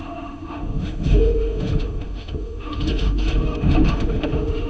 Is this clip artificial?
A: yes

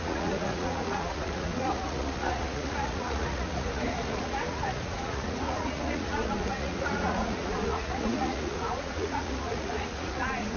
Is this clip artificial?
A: yes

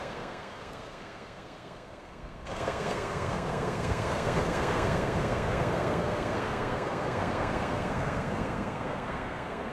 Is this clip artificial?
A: yes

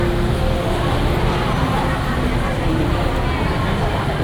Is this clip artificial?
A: no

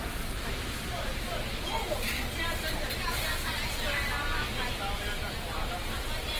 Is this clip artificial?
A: no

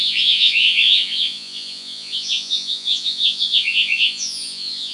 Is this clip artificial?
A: yes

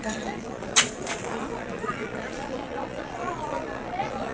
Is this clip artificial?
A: yes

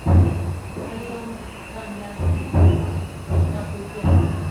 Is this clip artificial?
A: no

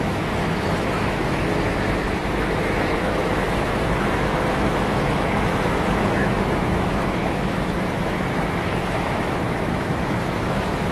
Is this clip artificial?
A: yes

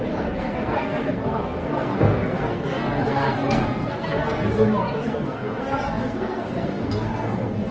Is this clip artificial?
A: yes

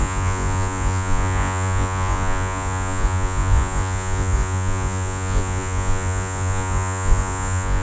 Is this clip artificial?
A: yes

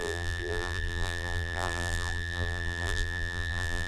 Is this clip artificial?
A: yes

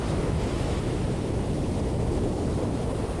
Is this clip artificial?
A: yes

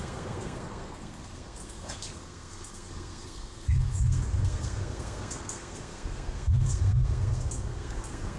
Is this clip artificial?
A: yes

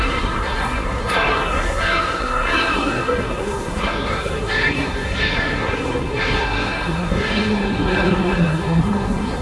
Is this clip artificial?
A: yes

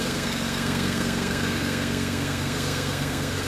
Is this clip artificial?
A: yes